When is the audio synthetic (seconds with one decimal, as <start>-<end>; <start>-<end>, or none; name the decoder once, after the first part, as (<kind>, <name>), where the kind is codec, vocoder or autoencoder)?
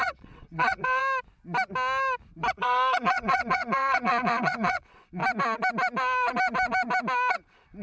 0.0-1.0 (vocoder, WaveNeXt); 2.5-5.2; 7.3-7.8